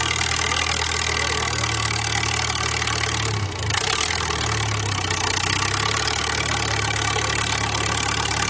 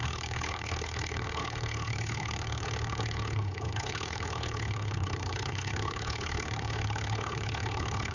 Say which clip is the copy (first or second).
second